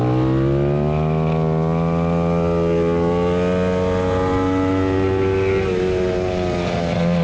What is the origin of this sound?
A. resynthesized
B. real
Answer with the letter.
B